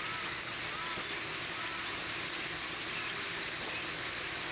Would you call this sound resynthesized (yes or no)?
no